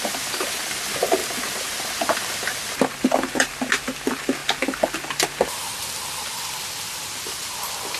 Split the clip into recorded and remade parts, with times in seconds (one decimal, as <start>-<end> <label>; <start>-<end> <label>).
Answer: 0.0-8.0 recorded